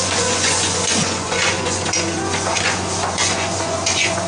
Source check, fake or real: fake